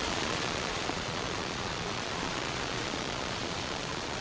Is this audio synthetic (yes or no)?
yes